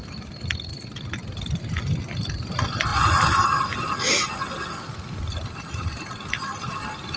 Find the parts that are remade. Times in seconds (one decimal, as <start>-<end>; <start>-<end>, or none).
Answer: none